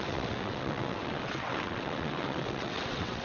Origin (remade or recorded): remade